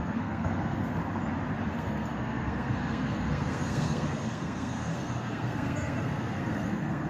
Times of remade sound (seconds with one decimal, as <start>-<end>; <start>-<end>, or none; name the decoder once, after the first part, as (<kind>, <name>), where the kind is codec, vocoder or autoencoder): 0.0-1.0 (codec, SNAC); 1.7-7.1